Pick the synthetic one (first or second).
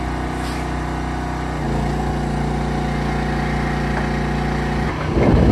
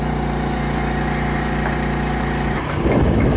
second